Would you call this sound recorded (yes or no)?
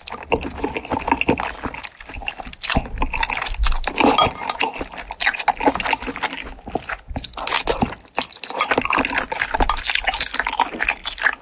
yes